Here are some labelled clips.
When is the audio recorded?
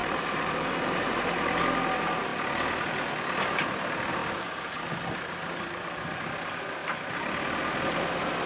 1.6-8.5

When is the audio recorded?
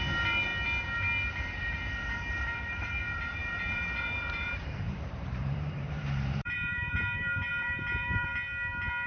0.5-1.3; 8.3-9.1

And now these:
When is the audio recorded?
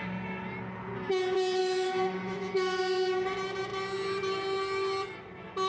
0.0-1.6; 2.8-5.7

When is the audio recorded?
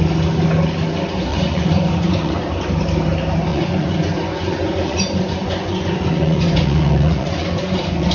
0.0-1.3; 2.5-3.5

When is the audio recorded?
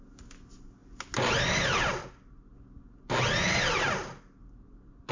0.0-5.1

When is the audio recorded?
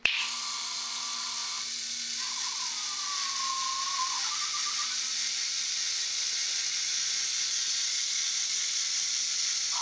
0.0-7.0; 8.0-9.8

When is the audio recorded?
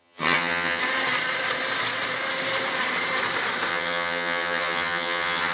0.8-3.7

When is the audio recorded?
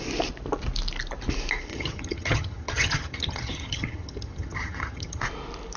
0.0-1.7; 5.2-5.8